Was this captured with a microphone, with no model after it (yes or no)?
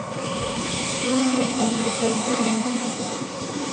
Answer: no